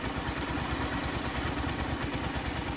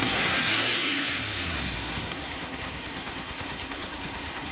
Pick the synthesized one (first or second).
second